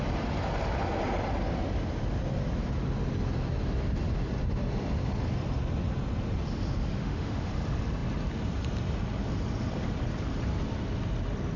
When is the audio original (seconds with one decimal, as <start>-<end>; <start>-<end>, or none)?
0.0-7.0; 7.5-11.6